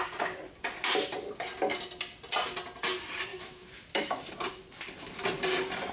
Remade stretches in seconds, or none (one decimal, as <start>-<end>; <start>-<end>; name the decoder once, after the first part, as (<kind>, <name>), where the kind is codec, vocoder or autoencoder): 3.3-4.3 (autoencoder, DAC-VAE)